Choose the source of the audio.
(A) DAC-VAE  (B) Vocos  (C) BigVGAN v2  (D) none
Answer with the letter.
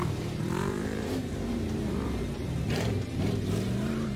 C